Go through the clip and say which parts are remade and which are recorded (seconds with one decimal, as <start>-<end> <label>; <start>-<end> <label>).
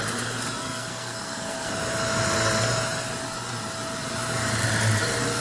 0.0-0.6 recorded; 0.6-1.7 remade; 1.7-5.4 recorded